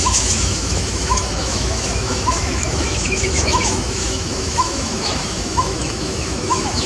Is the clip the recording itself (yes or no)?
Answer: no